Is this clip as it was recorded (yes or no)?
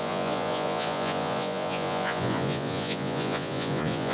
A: no